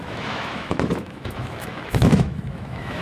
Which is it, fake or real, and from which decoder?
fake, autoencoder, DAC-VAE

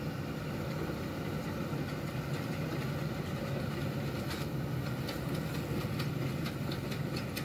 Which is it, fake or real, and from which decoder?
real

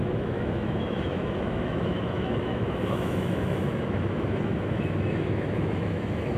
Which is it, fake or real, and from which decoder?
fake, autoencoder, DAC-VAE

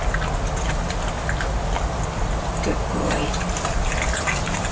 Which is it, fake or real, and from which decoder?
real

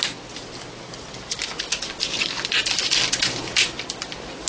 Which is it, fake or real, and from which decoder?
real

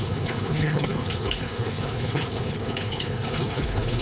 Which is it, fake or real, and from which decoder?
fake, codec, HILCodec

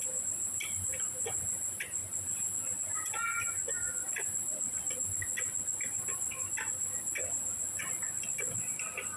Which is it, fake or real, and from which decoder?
real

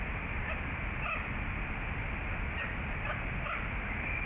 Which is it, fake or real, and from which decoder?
real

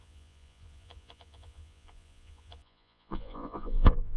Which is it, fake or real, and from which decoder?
fake, vocoder, Vocos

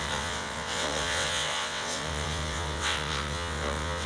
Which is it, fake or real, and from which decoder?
fake, vocoder, WaveNeXt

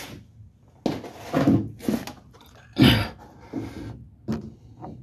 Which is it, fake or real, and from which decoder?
real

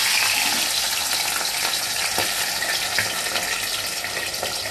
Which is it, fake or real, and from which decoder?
real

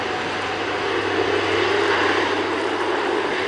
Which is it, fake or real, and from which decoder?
real